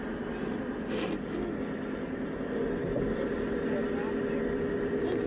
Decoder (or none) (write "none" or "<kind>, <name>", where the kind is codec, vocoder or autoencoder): none